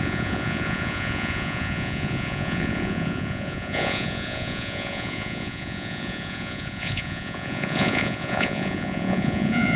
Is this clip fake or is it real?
fake